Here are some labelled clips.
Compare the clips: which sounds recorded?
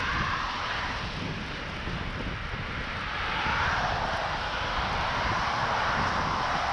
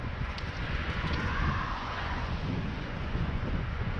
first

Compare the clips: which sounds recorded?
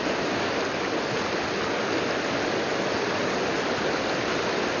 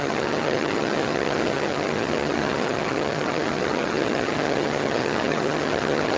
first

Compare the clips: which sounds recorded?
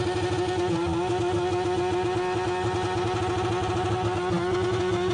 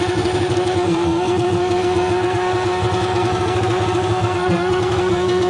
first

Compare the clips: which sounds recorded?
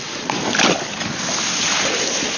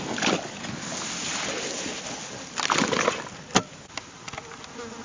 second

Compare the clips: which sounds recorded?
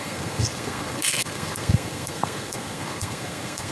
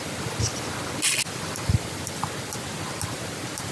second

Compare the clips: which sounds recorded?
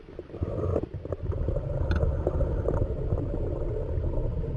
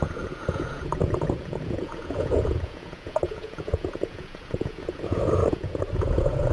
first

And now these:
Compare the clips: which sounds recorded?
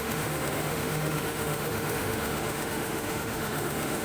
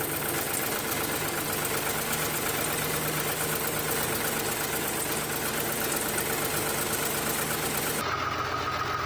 second